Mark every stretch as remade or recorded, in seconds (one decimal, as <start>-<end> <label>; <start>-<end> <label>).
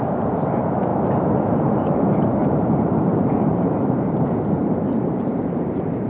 0.0-0.9 remade; 0.9-1.7 recorded; 1.7-6.1 remade